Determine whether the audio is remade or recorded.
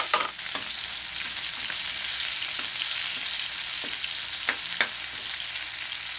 recorded